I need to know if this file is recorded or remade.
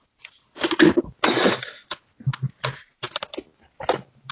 recorded